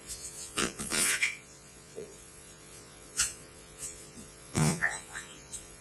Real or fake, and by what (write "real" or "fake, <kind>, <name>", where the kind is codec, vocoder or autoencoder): fake, vocoder, Vocos